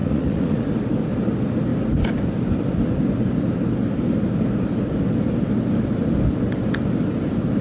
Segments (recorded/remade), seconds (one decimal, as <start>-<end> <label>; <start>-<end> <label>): 0.0-0.6 remade; 0.6-7.6 recorded